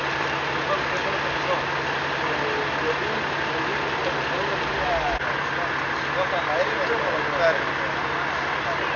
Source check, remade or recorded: recorded